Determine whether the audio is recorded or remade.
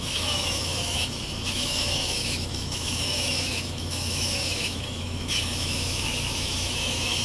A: remade